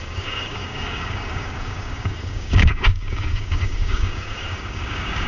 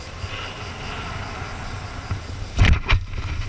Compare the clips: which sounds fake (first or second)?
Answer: first